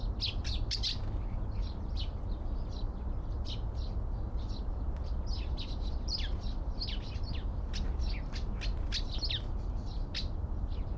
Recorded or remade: recorded